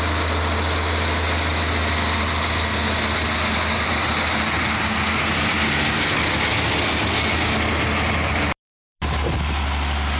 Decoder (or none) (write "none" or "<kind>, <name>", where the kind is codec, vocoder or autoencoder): none